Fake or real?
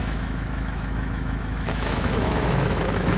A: fake